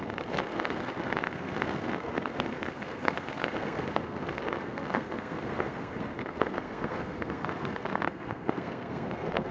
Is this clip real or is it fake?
fake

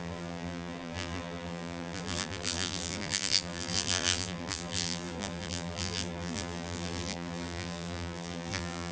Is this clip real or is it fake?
fake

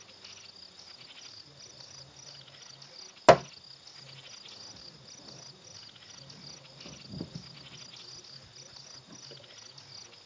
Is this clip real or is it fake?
real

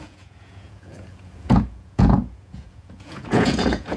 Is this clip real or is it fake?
fake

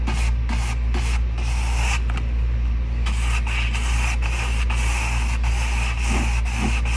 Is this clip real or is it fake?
real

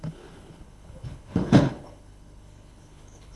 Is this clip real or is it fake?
fake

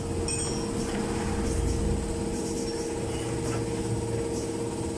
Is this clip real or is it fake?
real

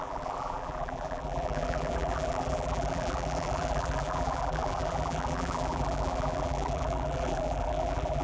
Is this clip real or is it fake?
fake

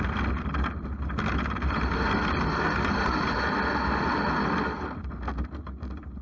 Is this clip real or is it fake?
real